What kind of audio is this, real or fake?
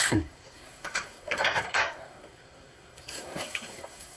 fake